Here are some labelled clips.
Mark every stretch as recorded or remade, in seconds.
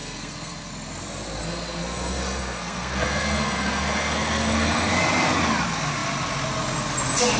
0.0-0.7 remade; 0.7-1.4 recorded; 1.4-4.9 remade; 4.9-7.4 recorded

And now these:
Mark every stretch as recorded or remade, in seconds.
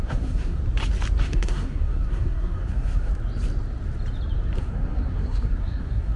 0.0-0.6 remade; 0.6-1.2 recorded; 1.2-3.1 remade; 3.1-4.6 recorded; 4.6-6.2 remade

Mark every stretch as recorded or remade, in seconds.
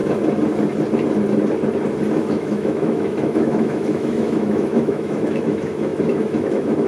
0.0-2.1 recorded; 2.1-6.9 remade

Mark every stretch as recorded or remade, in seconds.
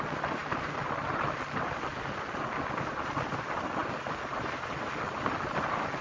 0.0-6.0 recorded